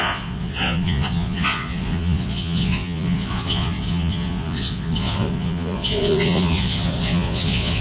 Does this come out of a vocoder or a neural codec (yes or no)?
yes